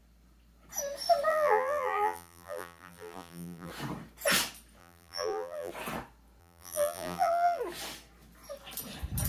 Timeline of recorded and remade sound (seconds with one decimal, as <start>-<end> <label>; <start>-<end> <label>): 0.0-1.3 recorded; 1.3-3.7 remade; 3.7-4.8 recorded; 4.8-5.7 remade; 5.7-6.4 recorded; 6.4-7.6 remade; 7.6-9.3 recorded